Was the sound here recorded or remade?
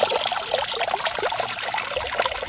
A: recorded